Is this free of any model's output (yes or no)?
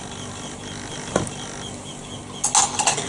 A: yes